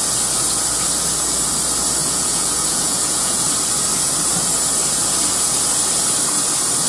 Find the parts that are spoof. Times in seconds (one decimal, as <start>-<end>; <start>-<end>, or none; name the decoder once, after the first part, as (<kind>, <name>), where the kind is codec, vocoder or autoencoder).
2.0-3.4 (vocoder, Vocos)